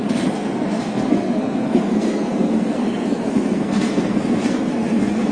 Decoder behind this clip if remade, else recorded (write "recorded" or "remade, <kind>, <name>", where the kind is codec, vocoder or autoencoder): remade, codec, SNAC